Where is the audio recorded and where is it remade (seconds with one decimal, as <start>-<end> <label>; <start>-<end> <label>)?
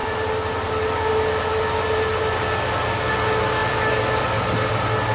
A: 0.0-5.1 recorded